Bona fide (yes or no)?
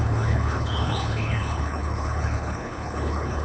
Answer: no